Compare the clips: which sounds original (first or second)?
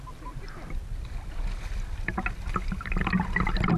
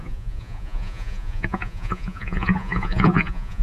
first